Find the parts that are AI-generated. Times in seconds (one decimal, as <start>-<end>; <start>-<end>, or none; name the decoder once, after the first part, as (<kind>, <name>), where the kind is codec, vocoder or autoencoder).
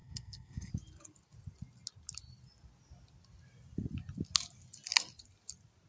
0.0-0.7 (codec, SNAC)